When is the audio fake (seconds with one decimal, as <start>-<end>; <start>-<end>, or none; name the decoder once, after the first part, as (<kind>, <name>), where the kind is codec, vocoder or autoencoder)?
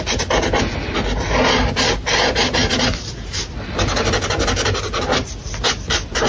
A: none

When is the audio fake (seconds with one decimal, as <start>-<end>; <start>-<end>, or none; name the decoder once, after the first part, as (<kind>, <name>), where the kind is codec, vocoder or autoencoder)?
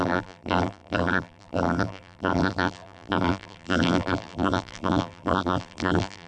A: 0.0-6.3 (vocoder, BigVGAN v2)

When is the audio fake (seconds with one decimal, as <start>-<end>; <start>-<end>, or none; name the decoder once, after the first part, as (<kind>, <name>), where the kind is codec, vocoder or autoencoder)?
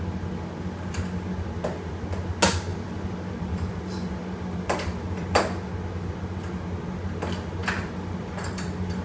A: 2.7-5.4 (vocoder, BigVGAN v2); 7.6-9.0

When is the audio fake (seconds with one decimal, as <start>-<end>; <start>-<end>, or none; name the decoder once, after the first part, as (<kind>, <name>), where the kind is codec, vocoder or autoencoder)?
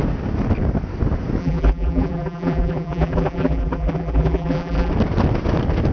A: 1.4-4.9 (vocoder, BigVGAN v2)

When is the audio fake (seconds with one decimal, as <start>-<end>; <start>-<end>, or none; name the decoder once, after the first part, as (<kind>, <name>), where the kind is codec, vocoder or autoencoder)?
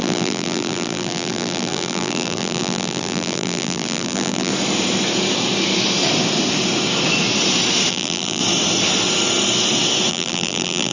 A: 0.0-4.5 (vocoder, BigVGAN v2); 7.9-8.4; 10.1-10.9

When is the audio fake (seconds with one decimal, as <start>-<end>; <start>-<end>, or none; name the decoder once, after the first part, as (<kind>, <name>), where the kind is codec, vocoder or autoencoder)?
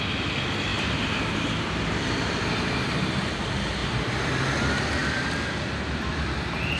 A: 0.7-2.3 (vocoder, BigVGAN v2)